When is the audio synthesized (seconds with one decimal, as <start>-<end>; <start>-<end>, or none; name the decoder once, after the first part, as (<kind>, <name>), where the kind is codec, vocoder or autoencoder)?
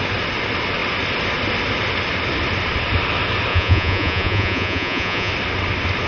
3.5-5.3 (vocoder, Vocos)